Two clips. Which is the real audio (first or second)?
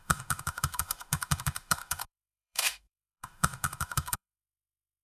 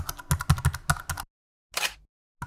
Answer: second